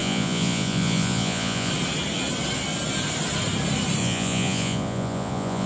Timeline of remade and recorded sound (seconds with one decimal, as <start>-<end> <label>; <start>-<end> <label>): 0.0-1.7 remade; 1.7-4.0 recorded; 4.0-5.7 remade